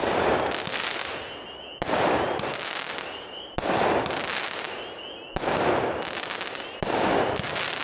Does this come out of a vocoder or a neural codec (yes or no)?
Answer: no